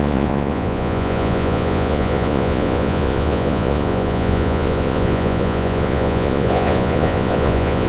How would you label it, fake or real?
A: fake